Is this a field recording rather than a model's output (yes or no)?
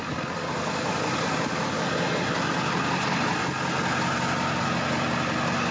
yes